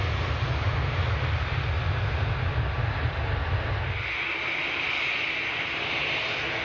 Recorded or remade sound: recorded